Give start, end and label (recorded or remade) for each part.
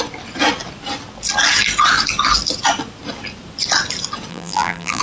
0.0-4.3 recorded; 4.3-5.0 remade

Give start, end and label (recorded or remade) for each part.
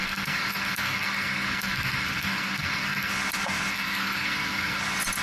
0.0-3.1 remade; 3.1-3.7 recorded; 3.7-4.8 remade; 4.8-5.2 recorded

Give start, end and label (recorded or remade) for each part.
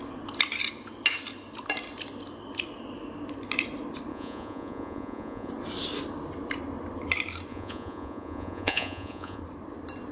0.0-4.1 recorded; 4.1-5.5 remade; 5.5-7.5 recorded; 7.5-9.4 remade; 9.4-10.1 recorded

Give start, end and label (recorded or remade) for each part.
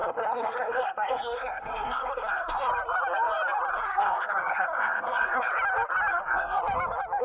0.0-2.7 remade; 2.7-3.7 recorded; 3.7-5.5 remade; 5.5-6.1 recorded; 6.1-6.6 remade; 6.6-7.2 recorded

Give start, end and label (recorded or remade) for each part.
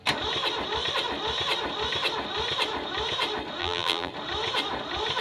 0.0-3.6 recorded; 3.6-4.1 remade; 4.1-5.2 recorded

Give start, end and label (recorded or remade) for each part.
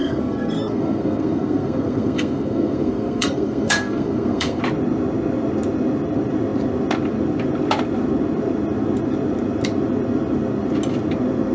0.0-4.6 remade; 4.6-11.5 recorded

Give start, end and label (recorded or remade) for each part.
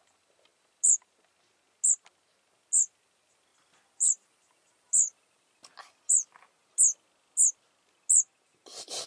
0.0-9.1 recorded